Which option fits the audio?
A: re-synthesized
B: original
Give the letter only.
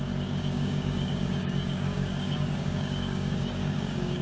A